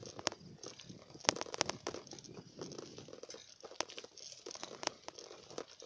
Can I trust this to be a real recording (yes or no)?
yes